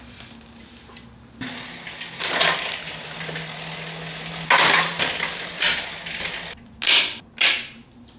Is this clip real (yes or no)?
yes